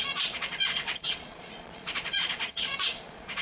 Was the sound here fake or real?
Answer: fake